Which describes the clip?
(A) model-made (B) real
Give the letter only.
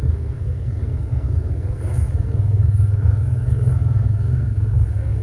A